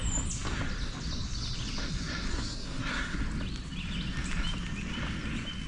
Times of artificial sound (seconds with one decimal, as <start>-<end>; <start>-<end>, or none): 2.3-3.2